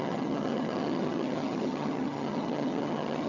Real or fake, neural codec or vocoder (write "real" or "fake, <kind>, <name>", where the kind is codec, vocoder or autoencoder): fake, vocoder, HiFi-GAN